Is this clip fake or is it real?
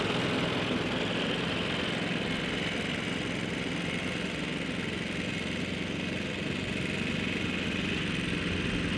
real